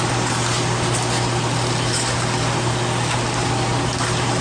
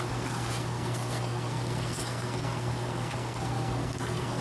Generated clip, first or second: second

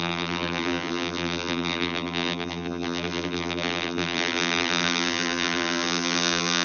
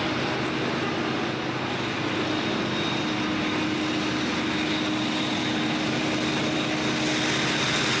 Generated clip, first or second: first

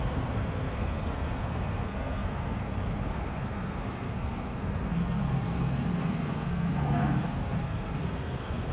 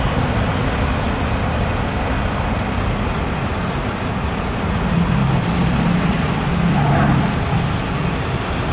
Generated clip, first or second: first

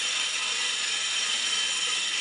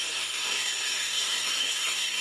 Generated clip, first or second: second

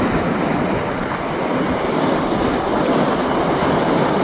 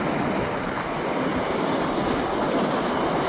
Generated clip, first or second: first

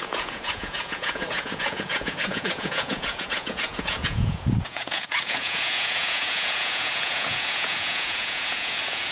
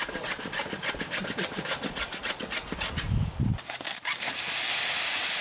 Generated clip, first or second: first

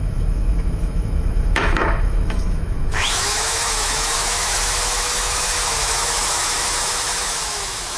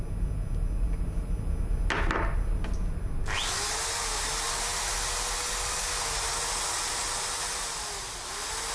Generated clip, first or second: first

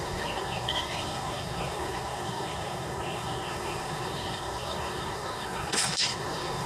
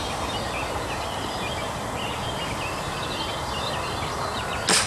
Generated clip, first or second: first